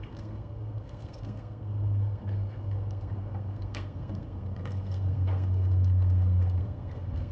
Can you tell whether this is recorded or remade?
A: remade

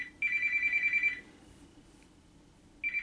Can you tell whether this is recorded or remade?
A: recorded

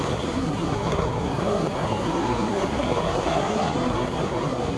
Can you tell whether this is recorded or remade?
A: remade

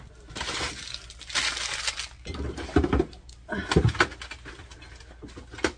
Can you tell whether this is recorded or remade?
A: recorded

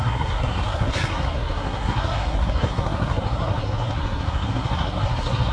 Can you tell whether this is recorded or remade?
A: remade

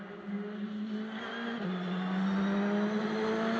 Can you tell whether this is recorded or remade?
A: recorded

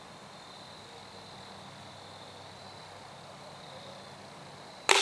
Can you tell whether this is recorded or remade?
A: recorded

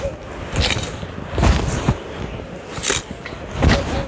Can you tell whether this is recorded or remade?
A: recorded